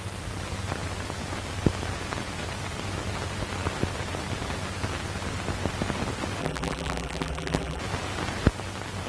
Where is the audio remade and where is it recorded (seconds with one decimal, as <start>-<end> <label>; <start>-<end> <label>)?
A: 0.0-6.4 recorded; 6.4-7.8 remade; 7.8-9.1 recorded